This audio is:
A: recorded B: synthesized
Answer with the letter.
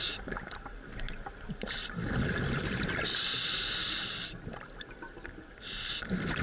A